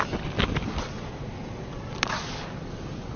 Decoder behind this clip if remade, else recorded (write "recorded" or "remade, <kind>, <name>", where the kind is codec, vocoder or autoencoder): recorded